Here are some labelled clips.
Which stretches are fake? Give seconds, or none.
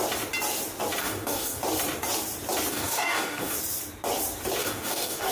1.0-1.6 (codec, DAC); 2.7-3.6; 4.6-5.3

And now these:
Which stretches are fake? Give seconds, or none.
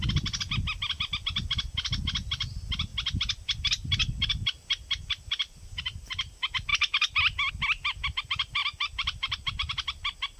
5.4-6.1 (vocoder, BigVGAN v2); 8.6-9.7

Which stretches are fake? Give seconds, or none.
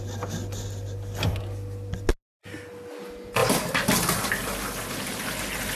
none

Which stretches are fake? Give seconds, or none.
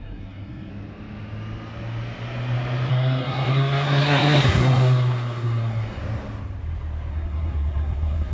0.0-0.7 (codec, SNAC); 2.9-6.0; 7.1-8.3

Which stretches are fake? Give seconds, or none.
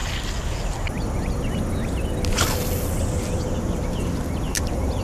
none